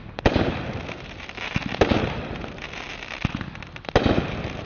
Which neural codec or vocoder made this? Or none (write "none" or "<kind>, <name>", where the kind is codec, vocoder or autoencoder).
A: none